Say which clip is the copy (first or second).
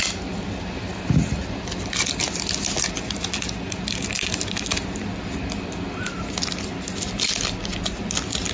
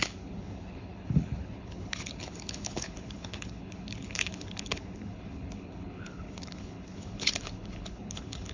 second